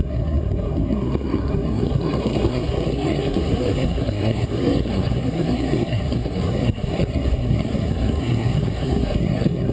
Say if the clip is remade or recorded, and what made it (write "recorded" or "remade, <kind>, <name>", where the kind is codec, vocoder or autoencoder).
remade, codec, SNAC